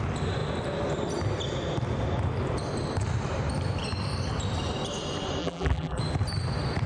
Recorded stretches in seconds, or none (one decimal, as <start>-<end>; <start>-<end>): 0.0-5.4; 6.0-6.9